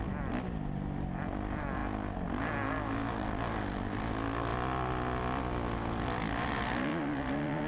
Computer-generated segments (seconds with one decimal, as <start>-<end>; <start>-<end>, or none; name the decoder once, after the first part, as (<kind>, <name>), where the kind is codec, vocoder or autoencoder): none